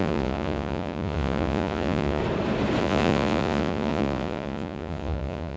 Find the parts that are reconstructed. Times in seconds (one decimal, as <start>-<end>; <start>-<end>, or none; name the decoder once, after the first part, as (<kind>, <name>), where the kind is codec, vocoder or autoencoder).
0.0-2.2 (vocoder, Vocos); 2.8-5.6